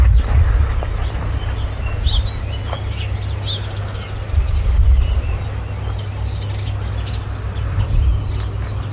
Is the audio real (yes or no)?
yes